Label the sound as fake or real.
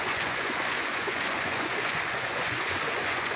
fake